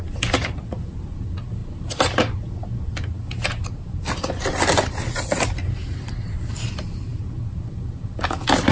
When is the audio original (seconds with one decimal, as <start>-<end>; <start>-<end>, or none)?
0.0-8.7